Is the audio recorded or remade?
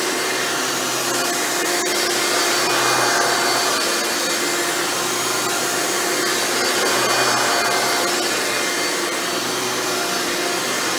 recorded